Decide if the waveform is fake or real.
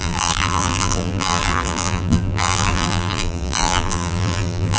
fake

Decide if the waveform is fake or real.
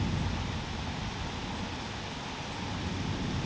real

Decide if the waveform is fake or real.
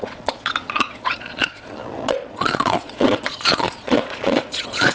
fake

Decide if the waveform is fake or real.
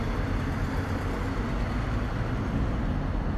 real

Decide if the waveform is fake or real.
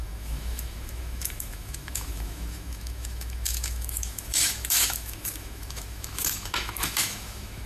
fake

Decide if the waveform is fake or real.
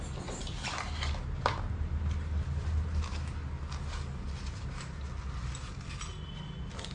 real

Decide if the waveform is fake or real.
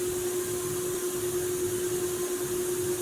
real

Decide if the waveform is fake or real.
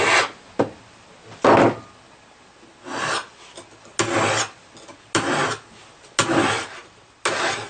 real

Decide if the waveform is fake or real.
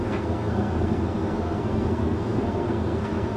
fake